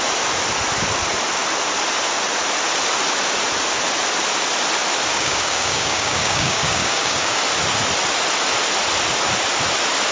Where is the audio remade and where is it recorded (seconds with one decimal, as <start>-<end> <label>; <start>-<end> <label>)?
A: 0.0-5.1 recorded; 5.1-7.4 remade; 7.4-10.1 recorded